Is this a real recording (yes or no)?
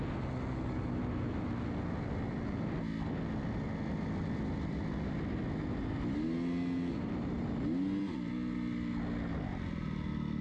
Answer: yes